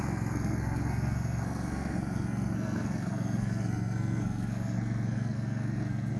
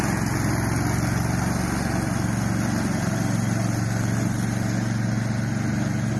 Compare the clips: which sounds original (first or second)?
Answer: second